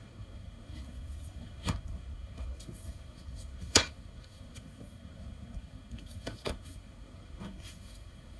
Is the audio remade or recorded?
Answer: remade